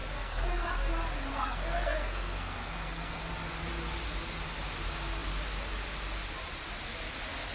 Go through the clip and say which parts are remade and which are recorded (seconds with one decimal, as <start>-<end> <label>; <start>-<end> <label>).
0.0-0.7 remade; 0.7-1.3 recorded; 1.3-3.2 remade; 3.2-7.5 recorded